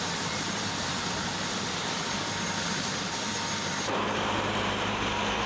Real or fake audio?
fake